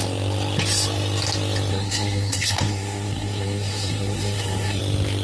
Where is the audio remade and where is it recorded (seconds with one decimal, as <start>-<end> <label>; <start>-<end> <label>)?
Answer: 0.0-1.7 recorded; 1.7-4.8 remade; 4.8-5.2 recorded